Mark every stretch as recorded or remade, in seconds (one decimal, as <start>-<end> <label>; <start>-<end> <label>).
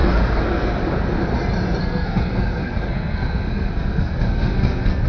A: 0.0-0.8 remade; 0.8-1.8 recorded; 1.8-5.1 remade